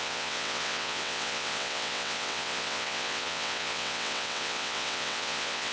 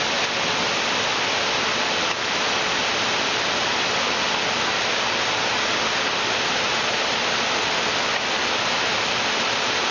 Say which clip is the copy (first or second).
first